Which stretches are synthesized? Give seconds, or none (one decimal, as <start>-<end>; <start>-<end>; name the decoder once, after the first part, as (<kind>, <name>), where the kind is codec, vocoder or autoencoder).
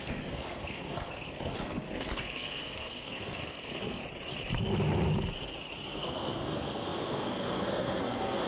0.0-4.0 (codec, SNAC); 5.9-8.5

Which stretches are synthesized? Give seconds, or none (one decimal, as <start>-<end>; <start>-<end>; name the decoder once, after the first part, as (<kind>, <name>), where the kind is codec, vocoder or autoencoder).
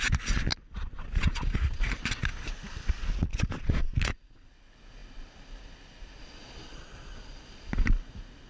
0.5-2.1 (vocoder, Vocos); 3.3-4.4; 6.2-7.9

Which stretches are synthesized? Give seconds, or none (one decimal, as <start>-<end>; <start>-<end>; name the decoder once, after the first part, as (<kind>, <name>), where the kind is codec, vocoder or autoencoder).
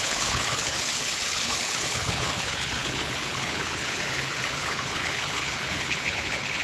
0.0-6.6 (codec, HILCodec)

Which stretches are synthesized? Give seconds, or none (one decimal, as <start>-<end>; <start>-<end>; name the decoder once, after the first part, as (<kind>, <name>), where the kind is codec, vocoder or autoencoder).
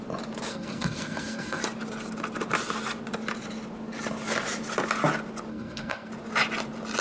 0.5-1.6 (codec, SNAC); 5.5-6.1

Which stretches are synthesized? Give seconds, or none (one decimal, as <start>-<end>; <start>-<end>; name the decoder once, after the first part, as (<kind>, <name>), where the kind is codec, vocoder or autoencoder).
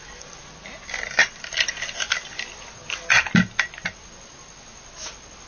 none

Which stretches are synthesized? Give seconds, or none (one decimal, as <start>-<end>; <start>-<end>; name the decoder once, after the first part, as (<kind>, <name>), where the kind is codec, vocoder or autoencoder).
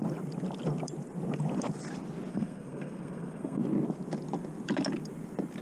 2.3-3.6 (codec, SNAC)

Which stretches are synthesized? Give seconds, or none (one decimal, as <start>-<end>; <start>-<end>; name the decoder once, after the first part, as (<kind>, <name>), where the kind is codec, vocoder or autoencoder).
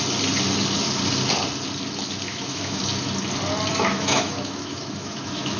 2.3-2.8 (autoencoder, DAC-VAE); 3.7-5.6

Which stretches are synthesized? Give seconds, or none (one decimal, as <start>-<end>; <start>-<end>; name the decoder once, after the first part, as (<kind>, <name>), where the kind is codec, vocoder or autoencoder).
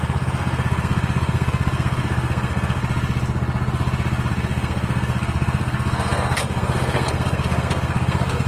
0.0-2.8 (codec, SNAC); 4.3-8.5